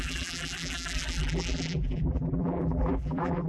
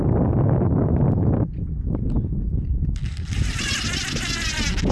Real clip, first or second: second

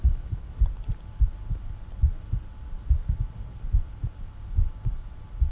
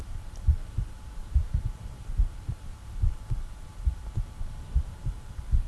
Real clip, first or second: first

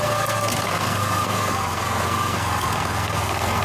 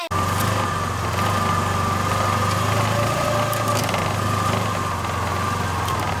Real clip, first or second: second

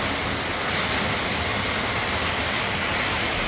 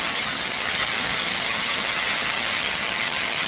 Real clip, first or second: first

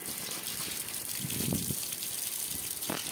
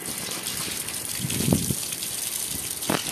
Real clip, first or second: second